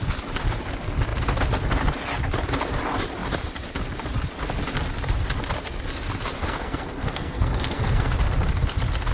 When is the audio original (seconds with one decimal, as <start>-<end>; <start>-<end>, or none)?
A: 0.0-6.4; 8.1-9.1